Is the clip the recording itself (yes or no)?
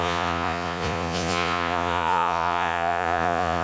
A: no